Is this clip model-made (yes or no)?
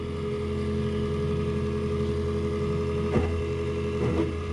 no